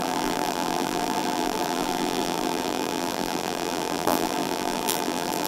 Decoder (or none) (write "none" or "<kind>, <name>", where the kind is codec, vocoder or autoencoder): vocoder, BigVGAN v2